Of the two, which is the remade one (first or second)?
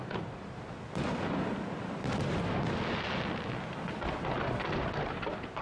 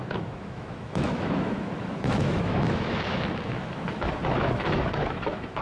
second